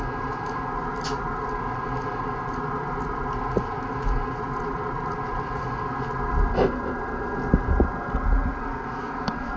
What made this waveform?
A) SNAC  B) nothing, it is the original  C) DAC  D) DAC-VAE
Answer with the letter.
B